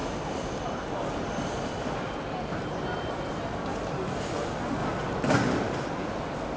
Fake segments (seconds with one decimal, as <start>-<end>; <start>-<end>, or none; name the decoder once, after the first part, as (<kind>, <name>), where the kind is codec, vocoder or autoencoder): none